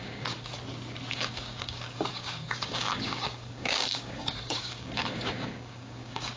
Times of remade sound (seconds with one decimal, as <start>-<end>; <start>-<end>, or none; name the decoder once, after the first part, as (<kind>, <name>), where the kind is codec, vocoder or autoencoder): 0.0-0.5 (codec, DAC); 1.1-6.4